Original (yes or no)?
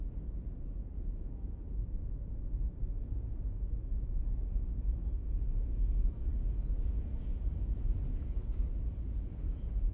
no